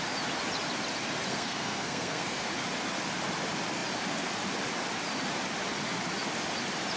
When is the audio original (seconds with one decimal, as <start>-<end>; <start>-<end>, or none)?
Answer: 0.0-1.3; 2.5-7.0